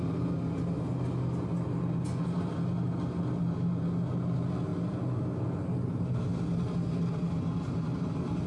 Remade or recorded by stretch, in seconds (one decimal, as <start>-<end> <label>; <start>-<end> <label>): 0.0-8.5 recorded

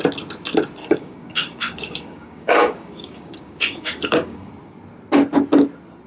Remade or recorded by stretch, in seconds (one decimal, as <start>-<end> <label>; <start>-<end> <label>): 0.0-0.8 recorded; 0.8-4.5 remade; 4.5-6.1 recorded

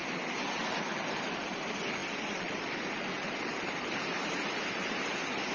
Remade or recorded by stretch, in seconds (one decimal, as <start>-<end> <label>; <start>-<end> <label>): 0.0-5.5 recorded

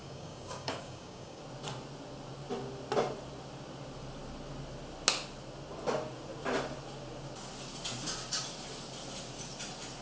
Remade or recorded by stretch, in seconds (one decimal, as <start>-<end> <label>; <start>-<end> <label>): 0.0-1.4 remade; 1.4-10.0 recorded